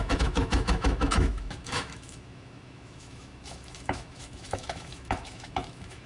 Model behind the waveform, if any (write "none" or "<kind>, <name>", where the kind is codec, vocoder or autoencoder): autoencoder, DAC-VAE